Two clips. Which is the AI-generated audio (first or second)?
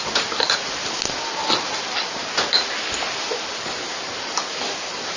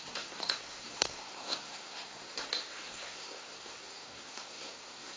second